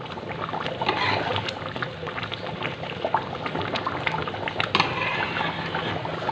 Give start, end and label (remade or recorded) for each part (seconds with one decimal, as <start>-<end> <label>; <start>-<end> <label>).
0.0-1.3 recorded; 1.3-5.1 remade; 5.1-6.3 recorded